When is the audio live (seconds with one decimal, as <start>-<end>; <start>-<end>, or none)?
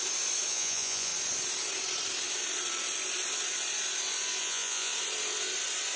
0.0-0.5; 1.1-4.4; 4.9-6.0